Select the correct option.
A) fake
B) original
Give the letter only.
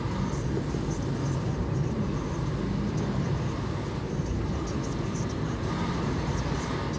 B